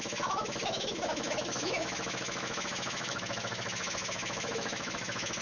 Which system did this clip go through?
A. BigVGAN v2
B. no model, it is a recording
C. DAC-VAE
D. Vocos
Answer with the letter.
C